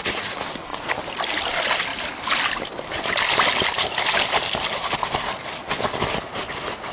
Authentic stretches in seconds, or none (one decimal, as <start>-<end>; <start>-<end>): 0.0-6.9